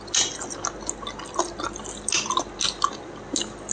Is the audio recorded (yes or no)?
yes